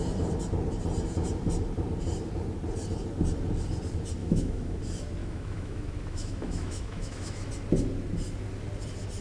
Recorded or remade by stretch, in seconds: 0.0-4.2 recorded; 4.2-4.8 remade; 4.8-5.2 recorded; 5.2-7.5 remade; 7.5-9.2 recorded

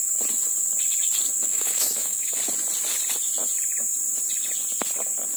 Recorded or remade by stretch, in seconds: 0.0-1.5 recorded; 1.5-2.4 remade; 2.4-5.4 recorded

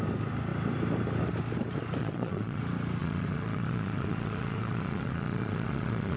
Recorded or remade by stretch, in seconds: 0.0-2.0 recorded; 2.0-2.6 remade; 2.6-3.0 recorded; 3.0-6.2 remade

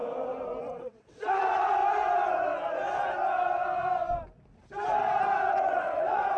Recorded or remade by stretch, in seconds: 0.0-0.6 recorded; 0.6-1.8 remade; 1.8-5.5 recorded; 5.5-6.4 remade

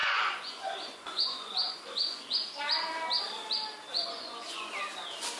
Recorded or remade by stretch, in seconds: 0.0-2.6 remade; 2.6-3.9 recorded; 3.9-4.7 remade; 4.7-5.4 recorded

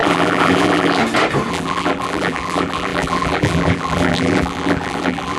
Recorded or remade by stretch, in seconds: 0.0-1.0 remade; 1.0-1.5 recorded; 1.5-5.4 remade

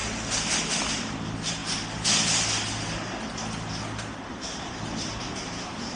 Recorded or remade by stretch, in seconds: 0.0-0.9 recorded; 0.9-1.6 remade; 1.6-4.3 recorded; 4.3-6.0 remade